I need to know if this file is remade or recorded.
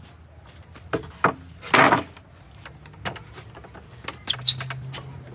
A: recorded